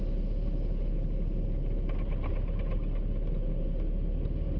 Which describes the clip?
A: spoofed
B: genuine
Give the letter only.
B